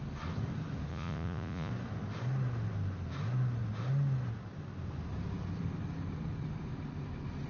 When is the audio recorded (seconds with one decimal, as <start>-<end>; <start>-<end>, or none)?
0.0-0.9; 1.7-7.5